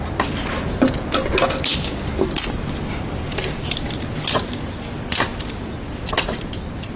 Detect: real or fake real